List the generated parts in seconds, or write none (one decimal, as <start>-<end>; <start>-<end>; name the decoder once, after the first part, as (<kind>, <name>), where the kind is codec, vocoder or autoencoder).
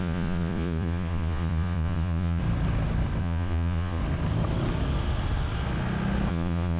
0.0-2.4 (vocoder, Vocos); 3.2-4.0; 6.3-6.8